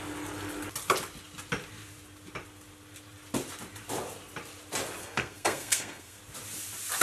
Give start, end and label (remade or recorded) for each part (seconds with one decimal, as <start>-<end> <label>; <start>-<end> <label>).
0.0-5.0 recorded; 5.0-6.2 remade; 6.2-7.0 recorded